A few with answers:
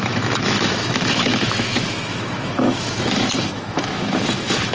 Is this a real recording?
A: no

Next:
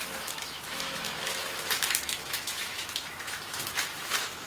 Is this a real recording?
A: no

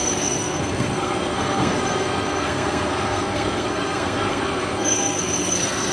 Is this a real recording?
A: no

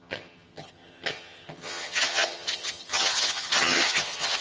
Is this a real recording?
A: no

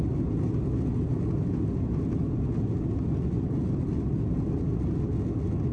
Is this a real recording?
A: yes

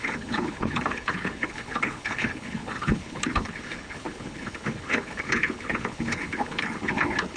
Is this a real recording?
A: no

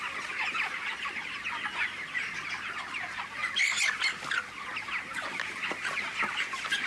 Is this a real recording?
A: yes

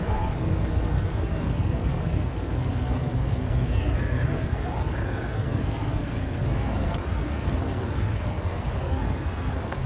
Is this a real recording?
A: no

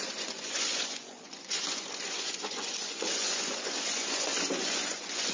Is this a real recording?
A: no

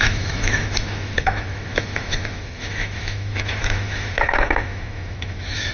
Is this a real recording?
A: no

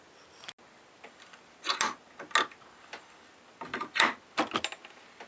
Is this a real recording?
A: yes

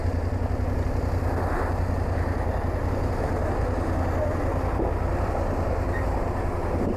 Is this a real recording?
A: yes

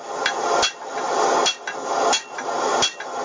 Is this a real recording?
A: yes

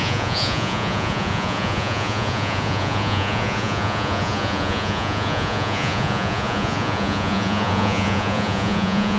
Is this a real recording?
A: no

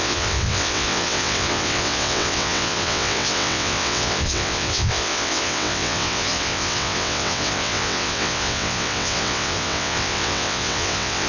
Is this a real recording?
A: no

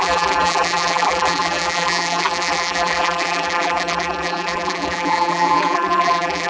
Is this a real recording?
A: no